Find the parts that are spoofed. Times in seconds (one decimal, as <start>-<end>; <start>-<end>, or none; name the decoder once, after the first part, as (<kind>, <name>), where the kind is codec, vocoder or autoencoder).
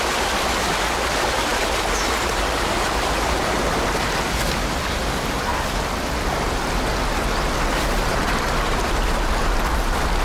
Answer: 8.1-8.9 (vocoder, BigVGAN v2)